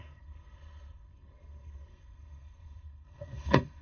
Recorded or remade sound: remade